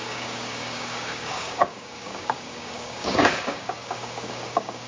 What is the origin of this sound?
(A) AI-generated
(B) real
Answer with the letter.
A